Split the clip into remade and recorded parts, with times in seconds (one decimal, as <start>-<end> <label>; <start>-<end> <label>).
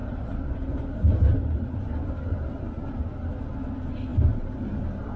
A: 0.0-3.1 remade; 3.1-4.1 recorded; 4.1-5.2 remade